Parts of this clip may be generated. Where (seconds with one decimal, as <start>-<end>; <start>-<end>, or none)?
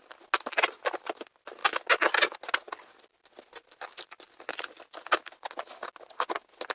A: none